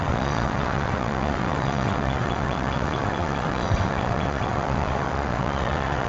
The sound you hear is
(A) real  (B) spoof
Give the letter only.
B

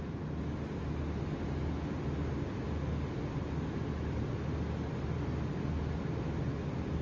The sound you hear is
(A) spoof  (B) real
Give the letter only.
B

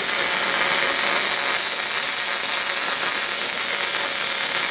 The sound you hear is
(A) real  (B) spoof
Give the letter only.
A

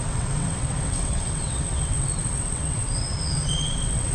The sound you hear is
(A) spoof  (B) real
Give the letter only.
A